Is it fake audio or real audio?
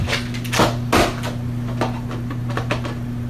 real